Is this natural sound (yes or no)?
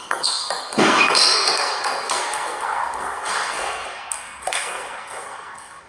no